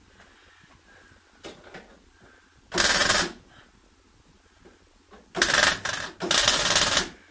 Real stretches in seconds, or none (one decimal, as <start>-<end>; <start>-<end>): 0.0-7.3